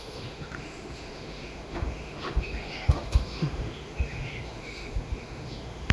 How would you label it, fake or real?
fake